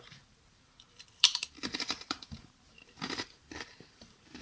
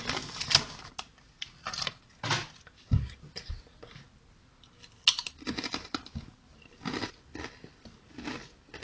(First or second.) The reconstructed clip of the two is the first